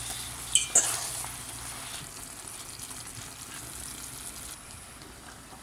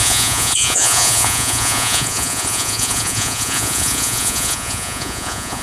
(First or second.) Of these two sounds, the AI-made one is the second